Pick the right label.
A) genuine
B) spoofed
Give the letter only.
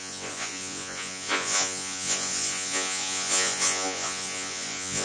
B